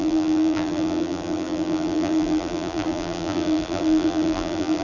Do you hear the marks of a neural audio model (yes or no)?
yes